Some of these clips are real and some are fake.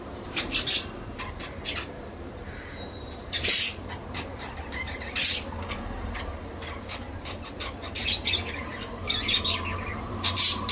fake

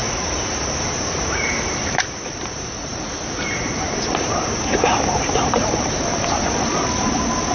fake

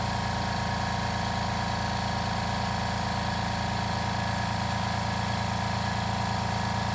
real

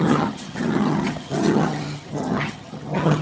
fake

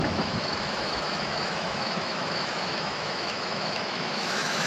fake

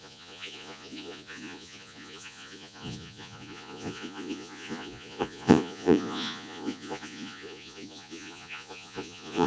fake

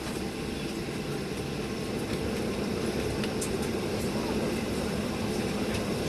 real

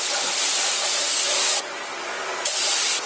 real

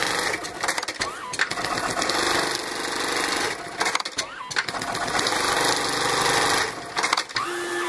real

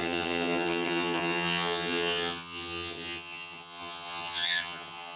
fake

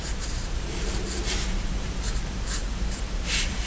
fake